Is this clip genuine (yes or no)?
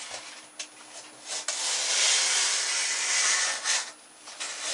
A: yes